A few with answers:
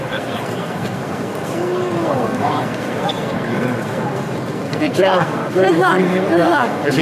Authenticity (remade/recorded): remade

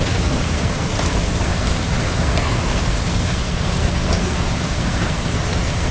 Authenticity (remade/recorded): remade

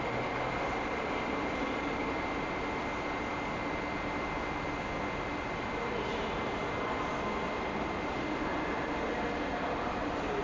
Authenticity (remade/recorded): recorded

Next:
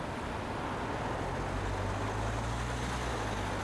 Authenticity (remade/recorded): recorded